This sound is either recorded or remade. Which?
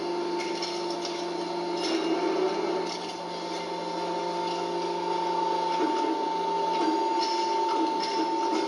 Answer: recorded